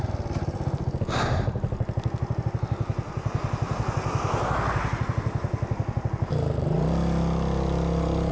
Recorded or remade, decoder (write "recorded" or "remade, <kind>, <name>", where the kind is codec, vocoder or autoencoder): recorded